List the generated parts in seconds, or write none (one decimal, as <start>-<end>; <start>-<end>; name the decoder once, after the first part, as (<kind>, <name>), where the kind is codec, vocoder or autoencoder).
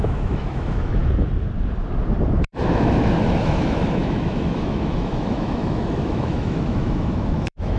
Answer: 0.0-1.0 (autoencoder, DAC-VAE); 2.4-7.8